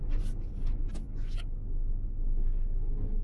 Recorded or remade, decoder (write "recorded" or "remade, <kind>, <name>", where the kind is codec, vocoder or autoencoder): recorded